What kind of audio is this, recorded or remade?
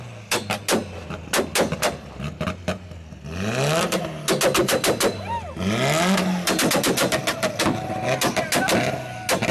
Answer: recorded